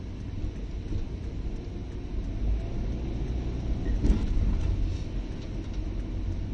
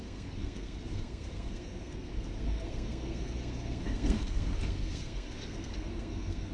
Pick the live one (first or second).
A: first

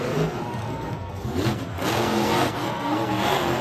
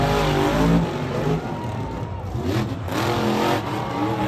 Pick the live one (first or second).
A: second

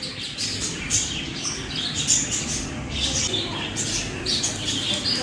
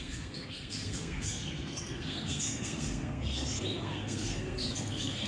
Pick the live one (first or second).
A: first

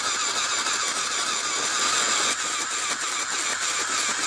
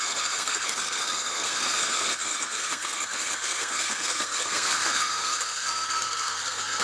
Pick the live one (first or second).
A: first